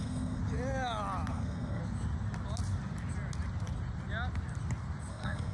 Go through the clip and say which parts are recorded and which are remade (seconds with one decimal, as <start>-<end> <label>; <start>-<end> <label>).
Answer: 0.0-0.4 remade; 0.4-1.3 recorded; 1.3-1.8 remade; 1.8-5.1 recorded; 5.1-5.5 remade